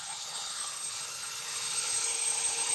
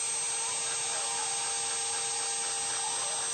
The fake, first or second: first